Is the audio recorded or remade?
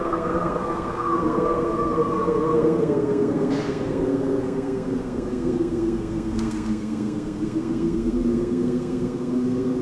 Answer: remade